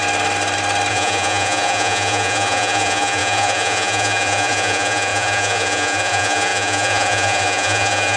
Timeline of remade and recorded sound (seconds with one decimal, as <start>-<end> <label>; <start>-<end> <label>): 0.0-0.9 recorded; 0.9-8.2 remade